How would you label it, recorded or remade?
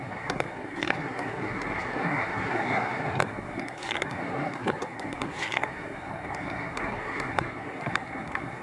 remade